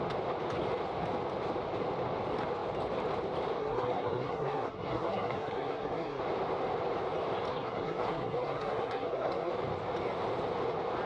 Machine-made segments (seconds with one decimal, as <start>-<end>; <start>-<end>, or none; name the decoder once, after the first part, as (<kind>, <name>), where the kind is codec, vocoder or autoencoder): 3.6-6.2 (codec, SNAC); 7.5-9.5

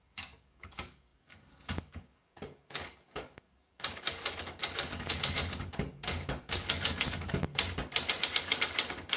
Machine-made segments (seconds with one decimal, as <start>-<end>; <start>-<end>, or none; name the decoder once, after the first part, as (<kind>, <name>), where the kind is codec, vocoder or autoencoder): 0.0-7.5 (codec, DAC); 8.2-9.2

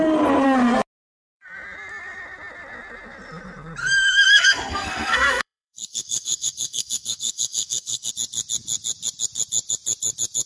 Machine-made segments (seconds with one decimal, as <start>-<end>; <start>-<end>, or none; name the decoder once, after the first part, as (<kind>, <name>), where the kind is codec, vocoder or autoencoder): 3.8-8.1 (codec, SNAC)

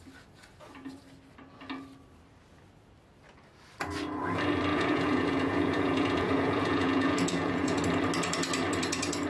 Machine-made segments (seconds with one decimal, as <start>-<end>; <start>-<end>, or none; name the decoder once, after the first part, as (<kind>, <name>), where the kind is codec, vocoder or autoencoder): 4.7-7.8 (vocoder, Vocos)

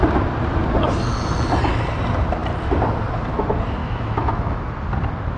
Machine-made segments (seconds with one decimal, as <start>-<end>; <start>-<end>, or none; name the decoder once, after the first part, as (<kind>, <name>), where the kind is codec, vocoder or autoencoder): 3.8-4.6 (autoencoder, DAC-VAE)

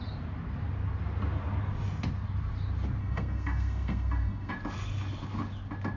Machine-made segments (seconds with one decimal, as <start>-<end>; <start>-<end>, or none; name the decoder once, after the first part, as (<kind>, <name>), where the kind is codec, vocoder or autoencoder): 3.0-4.5 (codec, SNAC)

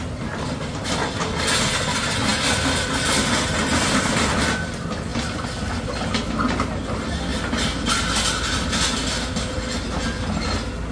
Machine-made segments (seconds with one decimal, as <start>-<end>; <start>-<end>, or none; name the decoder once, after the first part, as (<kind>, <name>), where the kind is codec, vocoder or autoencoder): none

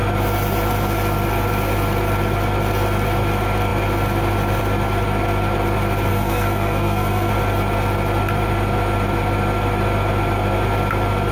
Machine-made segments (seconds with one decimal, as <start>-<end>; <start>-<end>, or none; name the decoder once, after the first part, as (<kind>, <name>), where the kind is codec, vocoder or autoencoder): 6.1-7.3 (codec, SNAC)